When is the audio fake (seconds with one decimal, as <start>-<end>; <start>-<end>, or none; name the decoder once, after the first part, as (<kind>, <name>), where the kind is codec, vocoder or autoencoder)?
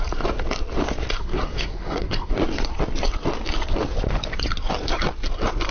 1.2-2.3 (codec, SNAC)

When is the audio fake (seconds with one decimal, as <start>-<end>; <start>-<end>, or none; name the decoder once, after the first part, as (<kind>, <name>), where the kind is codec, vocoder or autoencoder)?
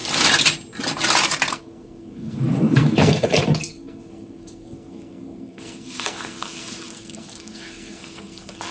1.5-8.7 (codec, SNAC)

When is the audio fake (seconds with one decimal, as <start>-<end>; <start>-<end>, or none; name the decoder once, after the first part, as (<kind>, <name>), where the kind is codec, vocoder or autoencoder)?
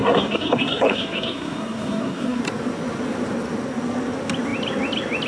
0.0-2.4 (codec, SNAC)